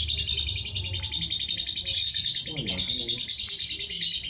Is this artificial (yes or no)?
no